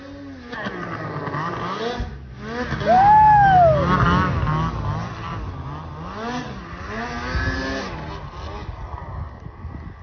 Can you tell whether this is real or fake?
real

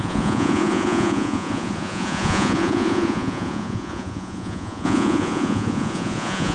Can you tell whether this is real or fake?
fake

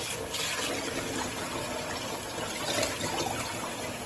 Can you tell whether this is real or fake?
real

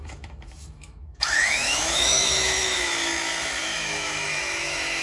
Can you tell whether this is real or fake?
fake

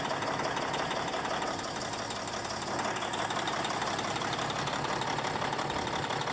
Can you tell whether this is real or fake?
real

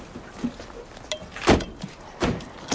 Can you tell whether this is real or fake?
real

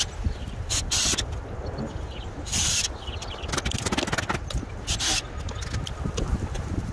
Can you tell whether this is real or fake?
real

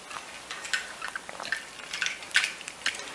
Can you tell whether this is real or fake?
real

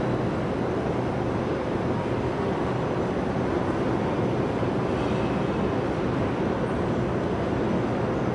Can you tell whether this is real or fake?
real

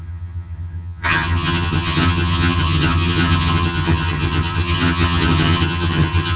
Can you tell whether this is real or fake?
fake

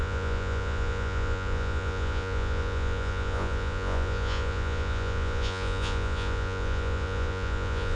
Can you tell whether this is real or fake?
fake